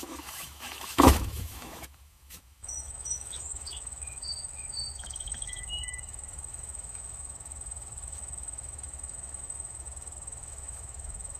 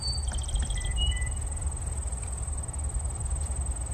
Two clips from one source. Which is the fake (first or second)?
first